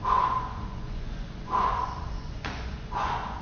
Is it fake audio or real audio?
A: fake